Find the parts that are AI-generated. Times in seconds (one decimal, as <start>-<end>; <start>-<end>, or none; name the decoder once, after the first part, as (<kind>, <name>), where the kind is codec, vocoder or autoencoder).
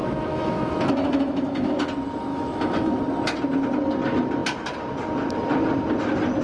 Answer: 0.0-1.8 (autoencoder, DAC-VAE); 2.3-3.0